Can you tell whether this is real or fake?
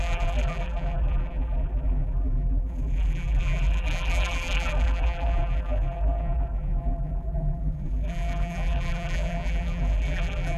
fake